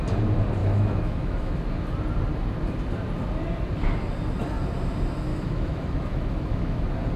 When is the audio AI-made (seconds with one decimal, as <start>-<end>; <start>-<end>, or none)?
0.6-1.6; 5.3-6.8

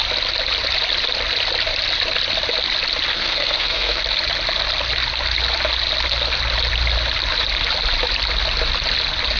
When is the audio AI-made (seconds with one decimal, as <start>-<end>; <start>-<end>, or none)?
3.1-4.0

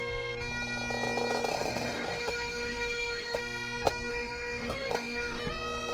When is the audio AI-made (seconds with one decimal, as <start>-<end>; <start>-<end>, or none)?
1.5-3.4; 4.1-5.4

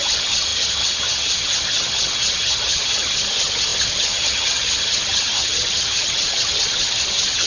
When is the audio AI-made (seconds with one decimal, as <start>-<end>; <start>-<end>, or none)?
0.0-7.5

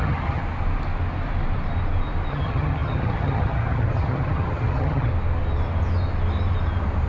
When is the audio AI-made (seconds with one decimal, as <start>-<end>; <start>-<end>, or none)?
0.0-0.4; 2.3-5.1

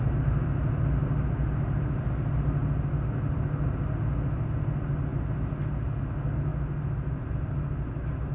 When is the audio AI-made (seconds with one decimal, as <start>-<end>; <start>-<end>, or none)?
none